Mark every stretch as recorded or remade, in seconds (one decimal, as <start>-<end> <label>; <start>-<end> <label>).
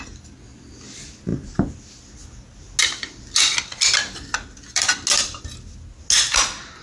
0.0-6.8 recorded